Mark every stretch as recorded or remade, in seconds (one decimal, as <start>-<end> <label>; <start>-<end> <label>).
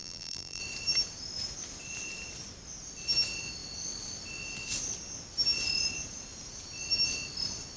0.0-0.6 remade; 0.6-7.8 recorded